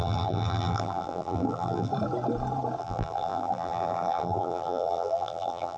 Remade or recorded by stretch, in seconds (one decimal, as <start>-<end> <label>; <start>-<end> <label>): 0.0-1.9 remade; 1.9-2.8 recorded; 2.8-5.8 remade